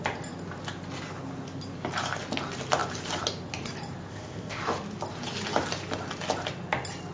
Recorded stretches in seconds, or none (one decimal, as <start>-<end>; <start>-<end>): 0.0-4.1; 4.6-7.1